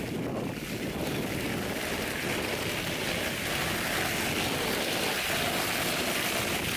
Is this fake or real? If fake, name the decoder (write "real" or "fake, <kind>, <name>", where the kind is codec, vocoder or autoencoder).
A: real